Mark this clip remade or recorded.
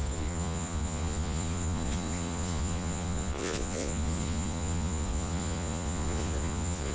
remade